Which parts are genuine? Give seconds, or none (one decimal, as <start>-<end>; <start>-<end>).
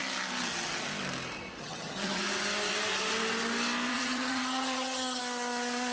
0.0-1.6; 2.2-3.9; 5.2-5.9